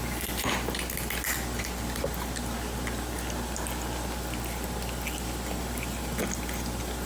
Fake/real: real